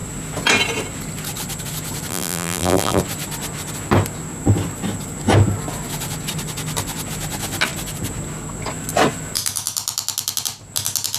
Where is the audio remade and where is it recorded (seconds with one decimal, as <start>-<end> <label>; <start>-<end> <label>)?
0.0-2.1 recorded; 2.1-3.0 remade; 3.0-11.2 recorded